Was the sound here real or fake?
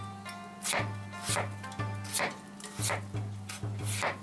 real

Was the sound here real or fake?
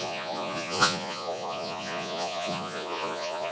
fake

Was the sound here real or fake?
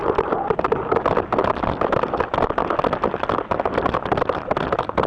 real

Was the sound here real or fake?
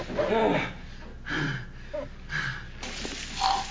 real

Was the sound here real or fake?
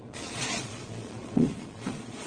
fake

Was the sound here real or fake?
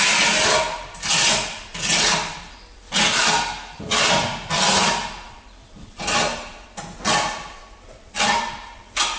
real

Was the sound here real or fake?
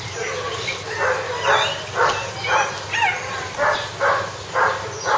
real